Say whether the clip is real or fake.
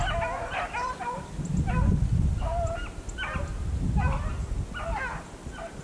real